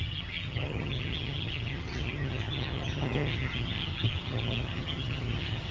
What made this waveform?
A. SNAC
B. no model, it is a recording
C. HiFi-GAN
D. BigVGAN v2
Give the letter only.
C